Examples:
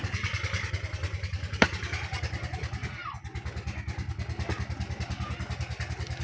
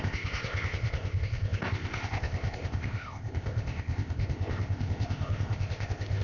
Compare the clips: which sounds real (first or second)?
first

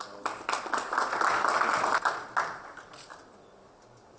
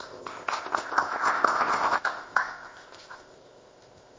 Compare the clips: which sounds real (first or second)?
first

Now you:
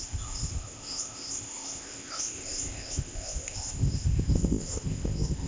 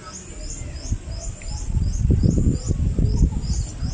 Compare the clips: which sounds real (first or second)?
second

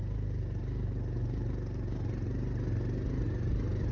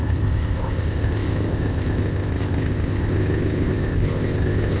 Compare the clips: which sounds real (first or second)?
first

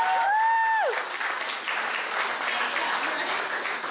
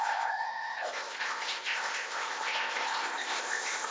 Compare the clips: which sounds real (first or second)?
first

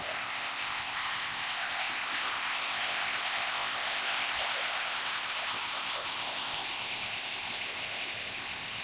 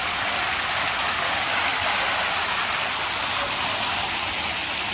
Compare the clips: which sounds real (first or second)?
second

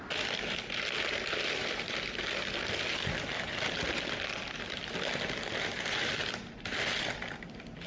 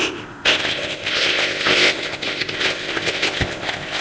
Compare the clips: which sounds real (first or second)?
first